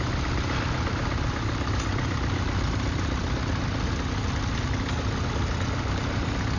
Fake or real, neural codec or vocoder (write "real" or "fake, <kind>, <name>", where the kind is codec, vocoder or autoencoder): real